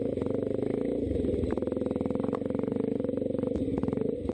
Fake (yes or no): no